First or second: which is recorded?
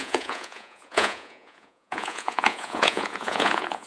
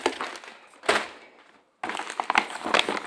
second